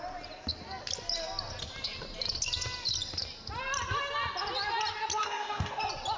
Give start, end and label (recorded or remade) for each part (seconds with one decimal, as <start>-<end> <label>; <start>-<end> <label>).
0.0-5.2 recorded; 5.2-5.8 remade; 5.8-6.2 recorded